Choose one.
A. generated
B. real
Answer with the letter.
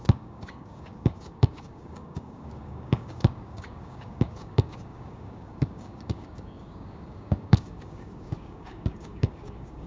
A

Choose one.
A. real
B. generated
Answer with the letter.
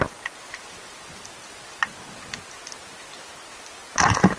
A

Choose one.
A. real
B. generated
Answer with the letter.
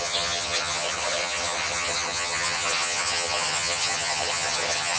B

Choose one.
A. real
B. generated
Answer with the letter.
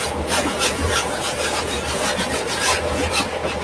B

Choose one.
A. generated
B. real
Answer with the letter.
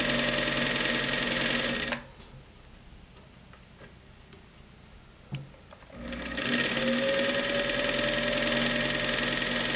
B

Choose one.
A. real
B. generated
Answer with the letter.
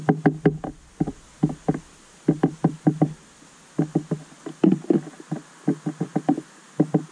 A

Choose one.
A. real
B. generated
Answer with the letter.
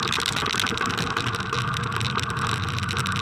A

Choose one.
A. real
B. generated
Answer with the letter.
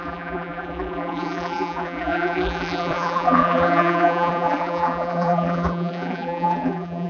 B